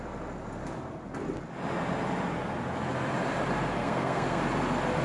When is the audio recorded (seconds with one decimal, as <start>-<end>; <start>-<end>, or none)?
0.0-3.8; 4.4-5.0